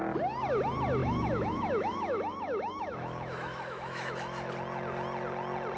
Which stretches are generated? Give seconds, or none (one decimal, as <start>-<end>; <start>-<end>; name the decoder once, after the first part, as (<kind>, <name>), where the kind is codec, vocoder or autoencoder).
1.0-4.5 (autoencoder, DAC-VAE)